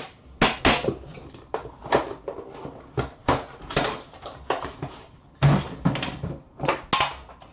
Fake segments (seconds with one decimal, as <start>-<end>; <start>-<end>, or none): 1.1-1.8; 3.2-6.8